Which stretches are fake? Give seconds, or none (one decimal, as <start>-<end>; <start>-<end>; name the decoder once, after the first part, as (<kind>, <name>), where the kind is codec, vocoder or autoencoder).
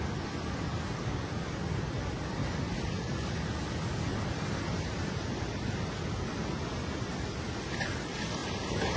0.7-1.5 (vocoder, BigVGAN v2); 2.4-3.3; 4.1-5.4; 8.4-9.0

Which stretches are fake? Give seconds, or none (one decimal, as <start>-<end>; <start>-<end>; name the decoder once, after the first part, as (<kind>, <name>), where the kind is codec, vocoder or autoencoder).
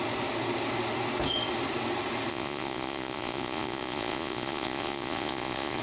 2.3-5.8 (vocoder, Vocos)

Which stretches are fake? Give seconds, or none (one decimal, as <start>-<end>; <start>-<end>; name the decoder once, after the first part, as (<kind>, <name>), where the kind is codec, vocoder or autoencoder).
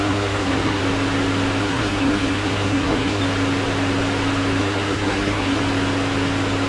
0.0-0.8 (codec, SNAC); 1.6-3.2; 4.6-5.6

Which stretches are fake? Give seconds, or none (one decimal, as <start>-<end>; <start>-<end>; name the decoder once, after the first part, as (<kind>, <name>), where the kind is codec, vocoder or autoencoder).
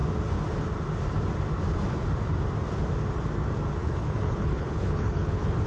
3.8-5.7 (codec, HILCodec)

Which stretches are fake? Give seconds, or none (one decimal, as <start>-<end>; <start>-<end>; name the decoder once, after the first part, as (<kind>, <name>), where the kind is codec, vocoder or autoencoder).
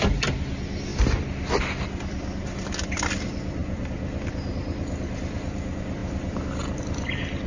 none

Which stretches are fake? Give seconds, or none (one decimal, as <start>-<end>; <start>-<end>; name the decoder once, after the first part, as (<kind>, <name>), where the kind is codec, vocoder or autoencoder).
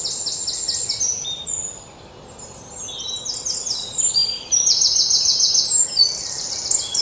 none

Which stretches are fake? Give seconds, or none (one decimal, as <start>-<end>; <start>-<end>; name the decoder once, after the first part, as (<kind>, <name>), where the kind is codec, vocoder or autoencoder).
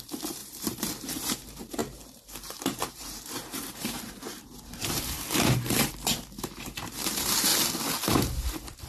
0.0-7.5 (vocoder, BigVGAN v2); 8.0-8.9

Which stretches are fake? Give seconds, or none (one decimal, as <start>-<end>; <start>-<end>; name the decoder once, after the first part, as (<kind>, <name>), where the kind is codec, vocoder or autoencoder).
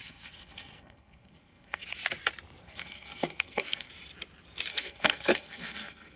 0.0-1.8 (codec, SNAC); 2.6-3.9; 4.7-6.2